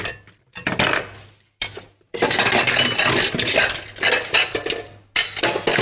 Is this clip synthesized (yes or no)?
no